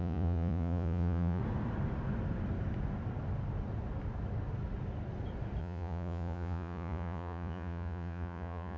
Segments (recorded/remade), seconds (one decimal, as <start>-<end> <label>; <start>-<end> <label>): 0.0-1.4 remade; 1.4-5.6 recorded; 5.6-8.8 remade